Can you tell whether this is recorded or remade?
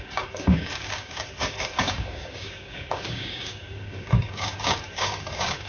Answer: remade